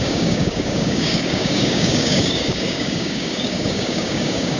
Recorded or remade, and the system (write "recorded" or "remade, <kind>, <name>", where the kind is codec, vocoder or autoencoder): remade, codec, DAC